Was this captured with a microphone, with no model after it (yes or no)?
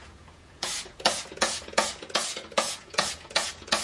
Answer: no